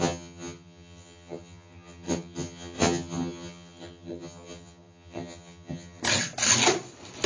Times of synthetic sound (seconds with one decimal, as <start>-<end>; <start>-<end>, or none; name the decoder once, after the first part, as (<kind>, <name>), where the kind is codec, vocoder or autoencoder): 0.0-6.0 (vocoder, HiFi-GAN)